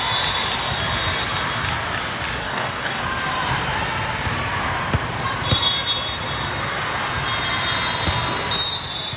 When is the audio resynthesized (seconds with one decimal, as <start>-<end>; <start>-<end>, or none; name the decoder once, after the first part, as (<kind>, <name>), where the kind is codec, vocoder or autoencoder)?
2.4-3.0 (codec, DAC)